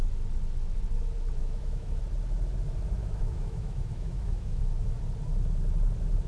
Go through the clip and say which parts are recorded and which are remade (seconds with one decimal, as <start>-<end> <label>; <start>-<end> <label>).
0.0-1.4 recorded; 1.4-2.0 remade; 2.0-3.0 recorded; 3.0-4.6 remade; 4.6-6.3 recorded